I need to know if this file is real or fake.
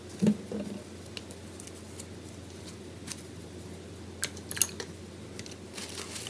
real